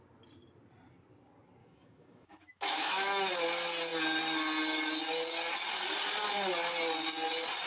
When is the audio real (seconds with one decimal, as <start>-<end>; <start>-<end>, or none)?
0.0-1.6; 3.3-7.7